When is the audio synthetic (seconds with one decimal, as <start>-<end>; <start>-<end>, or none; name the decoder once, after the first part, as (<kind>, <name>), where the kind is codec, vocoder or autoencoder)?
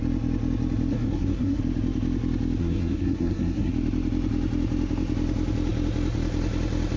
0.9-1.6 (codec, SNAC); 2.6-3.7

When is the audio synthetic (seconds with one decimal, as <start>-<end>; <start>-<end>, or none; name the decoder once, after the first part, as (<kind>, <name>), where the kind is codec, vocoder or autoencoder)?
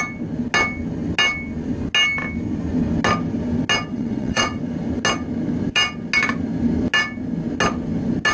3.9-4.6 (vocoder, WaveNeXt)